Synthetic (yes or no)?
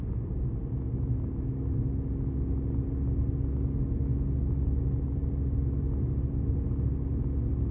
no